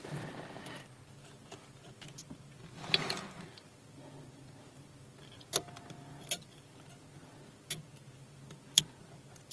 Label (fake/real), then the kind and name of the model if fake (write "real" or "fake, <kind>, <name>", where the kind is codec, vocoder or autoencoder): fake, vocoder, BigVGAN v2